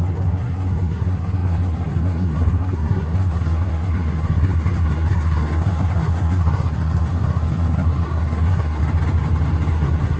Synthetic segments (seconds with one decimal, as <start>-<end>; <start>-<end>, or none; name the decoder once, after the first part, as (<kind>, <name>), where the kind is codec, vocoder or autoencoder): 0.0-8.8 (codec, SNAC); 9.7-10.2